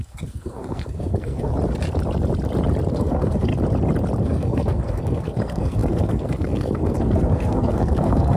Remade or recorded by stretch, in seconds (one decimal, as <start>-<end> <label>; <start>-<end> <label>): 0.0-1.5 remade; 1.5-2.9 recorded; 2.9-3.5 remade; 3.5-4.2 recorded; 4.2-8.4 remade